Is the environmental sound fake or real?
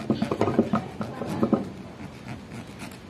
real